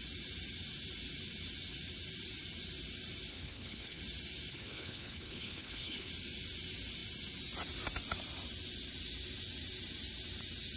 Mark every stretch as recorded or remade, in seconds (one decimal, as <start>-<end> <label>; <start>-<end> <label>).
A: 0.0-3.3 recorded; 3.3-4.0 remade; 4.0-4.5 recorded; 4.5-6.1 remade; 6.1-10.8 recorded